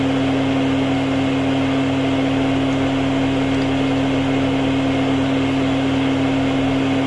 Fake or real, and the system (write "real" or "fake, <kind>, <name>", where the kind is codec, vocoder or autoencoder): real